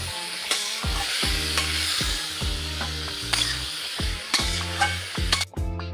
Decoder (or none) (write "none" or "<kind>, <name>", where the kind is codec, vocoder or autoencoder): codec, DAC